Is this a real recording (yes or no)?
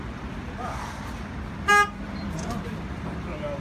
yes